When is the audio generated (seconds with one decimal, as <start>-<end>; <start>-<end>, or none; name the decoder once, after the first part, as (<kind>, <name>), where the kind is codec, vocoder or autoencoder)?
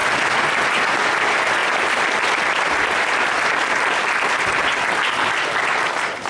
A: none